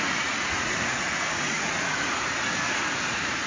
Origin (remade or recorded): remade